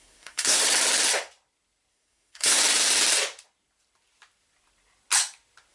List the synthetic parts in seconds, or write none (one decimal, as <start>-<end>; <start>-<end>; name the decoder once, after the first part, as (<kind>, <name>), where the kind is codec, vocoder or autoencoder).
0.0-0.6 (codec, SNAC); 1.9-2.6